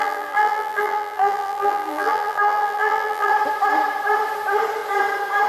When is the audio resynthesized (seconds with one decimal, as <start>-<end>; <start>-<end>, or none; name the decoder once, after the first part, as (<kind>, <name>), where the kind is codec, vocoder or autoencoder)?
0.0-3.3 (vocoder, BigVGAN v2)